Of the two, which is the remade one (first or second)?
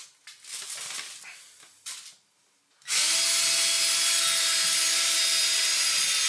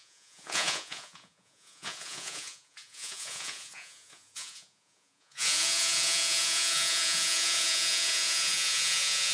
second